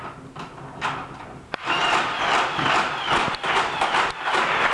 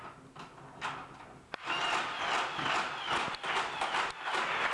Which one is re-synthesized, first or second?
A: first